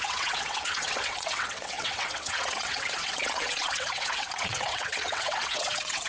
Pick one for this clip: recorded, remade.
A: remade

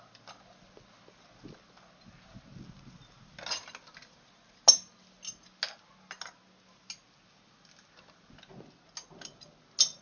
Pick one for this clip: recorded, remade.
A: recorded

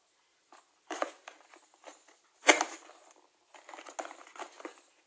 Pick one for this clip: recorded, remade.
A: recorded